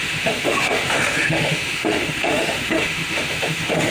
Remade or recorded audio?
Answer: remade